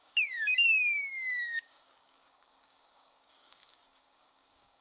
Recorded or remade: remade